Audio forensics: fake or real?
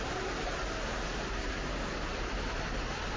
fake